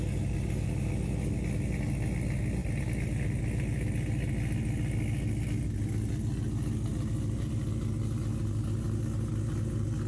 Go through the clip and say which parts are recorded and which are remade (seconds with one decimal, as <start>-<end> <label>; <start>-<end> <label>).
0.0-10.1 recorded